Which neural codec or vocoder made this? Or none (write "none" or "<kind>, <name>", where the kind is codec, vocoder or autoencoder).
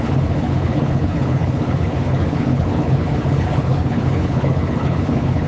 codec, HILCodec